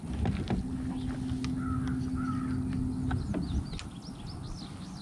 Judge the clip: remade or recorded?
recorded